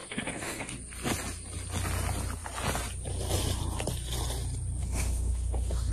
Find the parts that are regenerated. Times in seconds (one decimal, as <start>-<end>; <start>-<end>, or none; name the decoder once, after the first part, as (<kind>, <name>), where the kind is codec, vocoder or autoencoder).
0.0-0.8 (autoencoder, DAC-VAE); 4.8-5.9